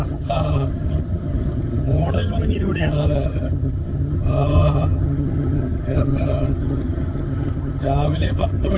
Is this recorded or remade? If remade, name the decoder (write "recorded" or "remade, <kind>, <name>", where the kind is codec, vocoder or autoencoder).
remade, vocoder, HiFi-GAN